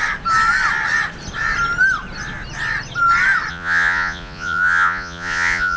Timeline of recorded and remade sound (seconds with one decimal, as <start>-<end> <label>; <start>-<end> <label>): 0.0-3.5 recorded; 3.5-5.8 remade